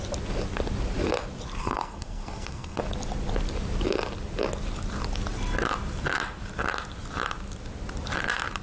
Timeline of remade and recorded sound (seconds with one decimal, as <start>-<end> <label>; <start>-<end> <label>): 0.0-1.6 recorded; 1.6-2.8 remade; 2.8-8.6 recorded